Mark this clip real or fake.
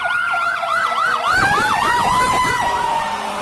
fake